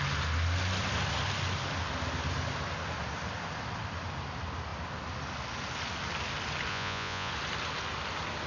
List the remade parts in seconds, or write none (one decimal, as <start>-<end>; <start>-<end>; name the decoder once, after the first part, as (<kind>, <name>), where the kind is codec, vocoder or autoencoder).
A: 6.7-7.3 (vocoder, Vocos)